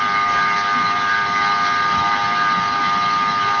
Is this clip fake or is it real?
real